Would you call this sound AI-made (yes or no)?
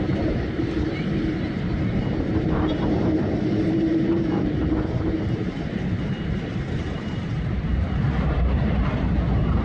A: yes